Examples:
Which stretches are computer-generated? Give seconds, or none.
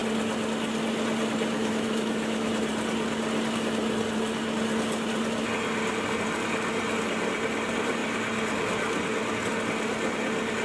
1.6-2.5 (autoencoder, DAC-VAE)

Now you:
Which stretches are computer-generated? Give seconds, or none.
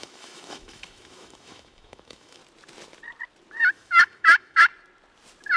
0.0-2.4 (autoencoder, DAC-VAE); 3.7-4.7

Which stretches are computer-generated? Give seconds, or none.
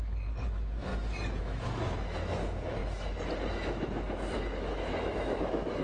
0.0-0.9 (autoencoder, DAC-VAE); 1.4-2.8; 3.5-5.8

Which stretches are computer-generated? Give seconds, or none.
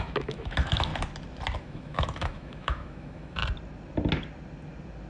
0.0-0.9 (autoencoder, DAC-VAE); 1.6-3.4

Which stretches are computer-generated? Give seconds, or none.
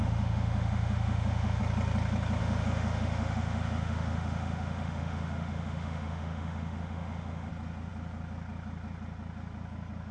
0.0-1.6 (autoencoder, DAC-VAE); 2.4-7.5